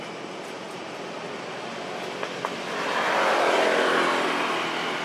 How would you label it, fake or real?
real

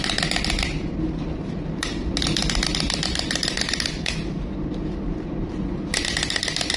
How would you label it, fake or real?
real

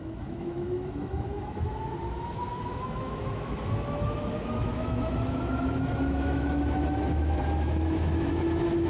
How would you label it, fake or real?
fake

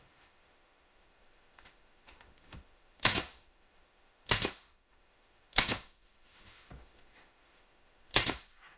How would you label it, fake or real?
fake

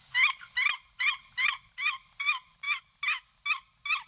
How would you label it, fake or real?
real